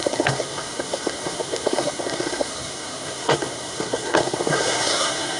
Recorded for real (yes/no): no